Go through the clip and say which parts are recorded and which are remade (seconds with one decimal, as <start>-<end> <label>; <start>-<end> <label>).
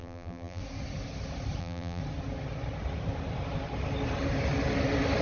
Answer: 0.0-0.6 remade; 0.6-1.6 recorded; 1.6-2.0 remade; 2.0-5.2 recorded